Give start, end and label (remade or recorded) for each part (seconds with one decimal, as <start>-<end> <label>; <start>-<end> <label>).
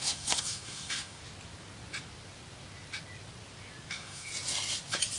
0.0-1.2 remade; 1.2-3.9 recorded; 3.9-4.3 remade; 4.3-5.2 recorded